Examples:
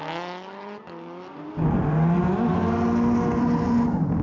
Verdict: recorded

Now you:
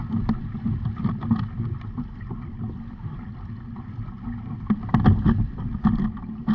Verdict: recorded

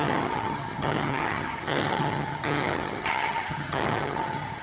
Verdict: remade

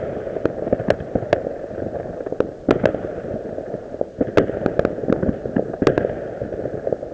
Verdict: recorded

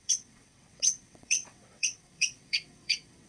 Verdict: remade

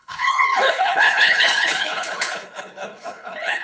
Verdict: remade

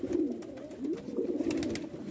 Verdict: recorded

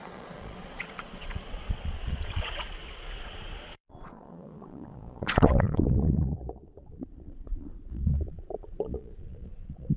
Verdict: remade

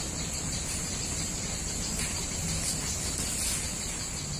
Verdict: recorded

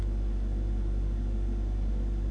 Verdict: recorded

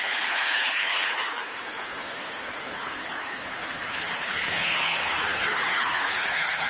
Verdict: remade